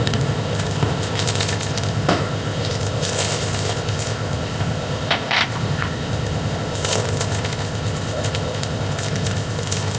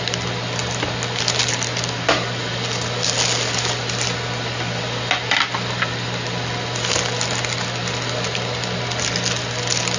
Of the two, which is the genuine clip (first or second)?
second